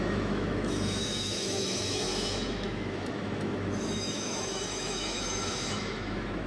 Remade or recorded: remade